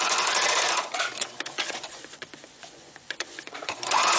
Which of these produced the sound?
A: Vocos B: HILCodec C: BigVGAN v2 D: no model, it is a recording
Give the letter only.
A